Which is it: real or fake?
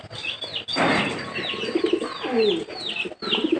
real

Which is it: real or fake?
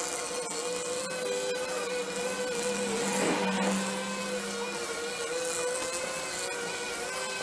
real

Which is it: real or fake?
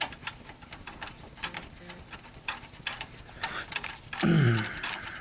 real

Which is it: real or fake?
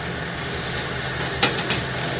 real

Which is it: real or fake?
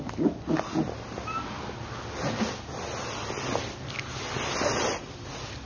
real